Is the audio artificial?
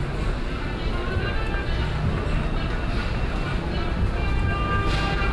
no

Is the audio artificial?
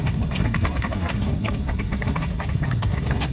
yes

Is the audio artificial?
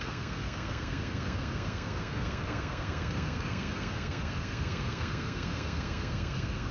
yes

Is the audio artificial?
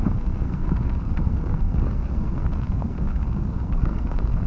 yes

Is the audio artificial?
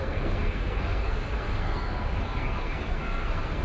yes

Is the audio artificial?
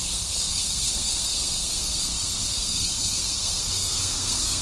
yes